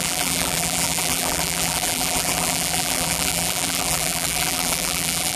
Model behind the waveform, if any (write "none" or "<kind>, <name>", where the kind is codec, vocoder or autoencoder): vocoder, BigVGAN v2